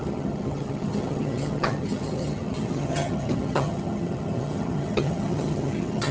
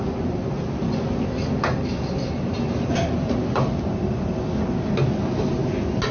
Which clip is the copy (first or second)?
first